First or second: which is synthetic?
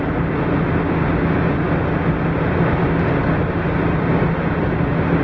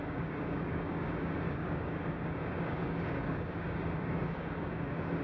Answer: second